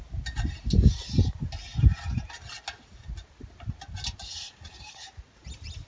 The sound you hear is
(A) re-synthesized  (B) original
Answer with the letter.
B